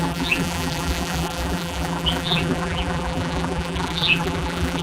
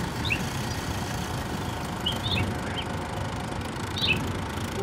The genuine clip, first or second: second